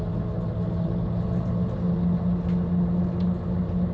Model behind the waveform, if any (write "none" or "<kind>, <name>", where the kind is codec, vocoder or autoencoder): none